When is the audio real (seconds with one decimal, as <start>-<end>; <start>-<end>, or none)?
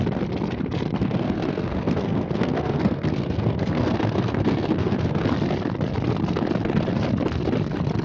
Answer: 0.0-1.0; 5.2-8.0